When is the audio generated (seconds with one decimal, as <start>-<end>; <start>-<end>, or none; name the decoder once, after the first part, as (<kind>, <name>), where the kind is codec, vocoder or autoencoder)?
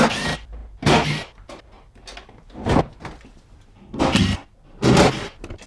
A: none